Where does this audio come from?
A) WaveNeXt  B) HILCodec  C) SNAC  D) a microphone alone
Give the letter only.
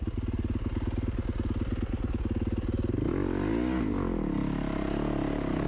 D